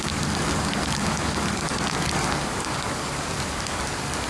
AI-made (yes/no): yes